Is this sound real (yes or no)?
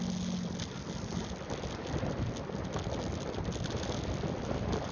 yes